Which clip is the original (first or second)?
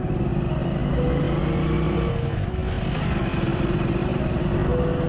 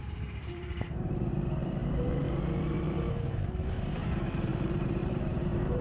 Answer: first